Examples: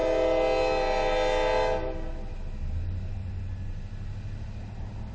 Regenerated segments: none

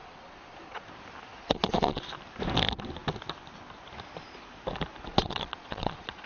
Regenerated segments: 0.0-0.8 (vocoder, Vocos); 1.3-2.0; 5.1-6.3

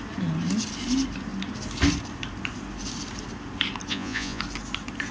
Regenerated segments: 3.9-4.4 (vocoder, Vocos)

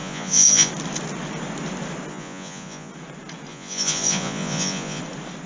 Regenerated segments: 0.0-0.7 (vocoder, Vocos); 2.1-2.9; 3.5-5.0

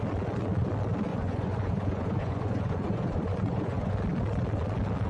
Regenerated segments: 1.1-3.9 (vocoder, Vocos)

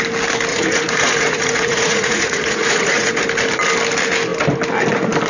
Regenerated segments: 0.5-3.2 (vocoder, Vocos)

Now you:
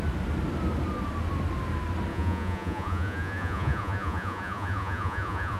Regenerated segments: 2.1-5.6 (vocoder, Vocos)